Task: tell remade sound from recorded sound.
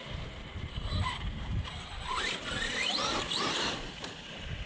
remade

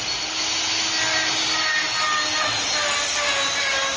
recorded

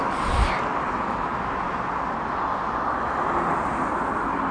recorded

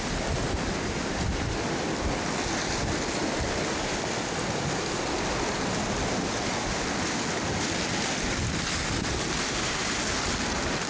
recorded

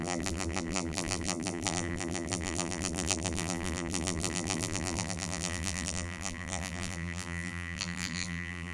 remade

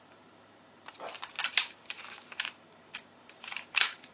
remade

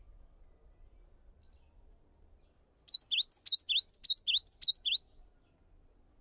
recorded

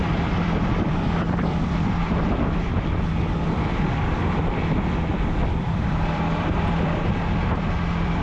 remade